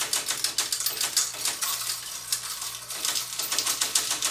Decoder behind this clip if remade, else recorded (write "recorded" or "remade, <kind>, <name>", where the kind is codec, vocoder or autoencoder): recorded